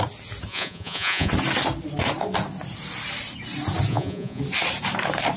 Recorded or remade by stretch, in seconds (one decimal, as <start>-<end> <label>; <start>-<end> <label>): 0.0-0.5 recorded; 0.5-1.3 remade; 1.3-3.9 recorded; 3.9-4.4 remade; 4.4-5.4 recorded